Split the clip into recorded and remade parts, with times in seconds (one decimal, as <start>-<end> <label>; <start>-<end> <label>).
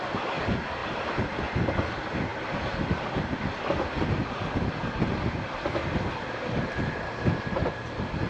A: 0.0-8.3 recorded